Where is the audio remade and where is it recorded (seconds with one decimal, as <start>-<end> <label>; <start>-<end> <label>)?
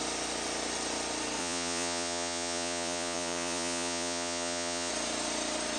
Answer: 0.0-1.4 recorded; 1.4-4.9 remade; 4.9-5.8 recorded